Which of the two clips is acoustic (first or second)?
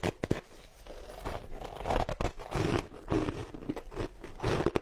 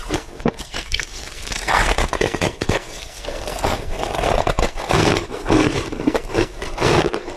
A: first